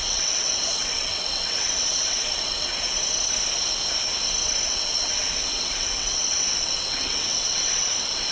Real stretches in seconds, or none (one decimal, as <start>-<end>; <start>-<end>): 2.7-4.6